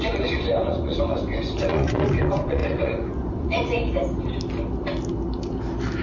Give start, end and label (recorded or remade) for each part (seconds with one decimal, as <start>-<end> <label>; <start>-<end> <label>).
0.0-3.8 remade; 3.8-6.0 recorded